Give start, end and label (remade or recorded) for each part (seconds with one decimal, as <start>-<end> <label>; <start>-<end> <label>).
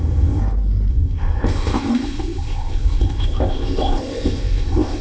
0.0-0.4 remade; 0.4-0.9 recorded; 0.9-5.0 remade